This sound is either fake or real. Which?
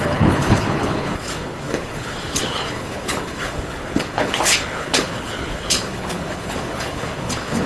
fake